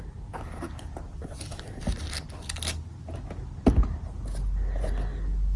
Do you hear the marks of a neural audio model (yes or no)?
no